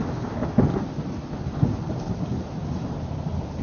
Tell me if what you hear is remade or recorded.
recorded